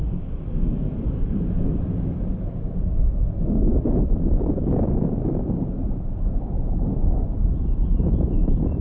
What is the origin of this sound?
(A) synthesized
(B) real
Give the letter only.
A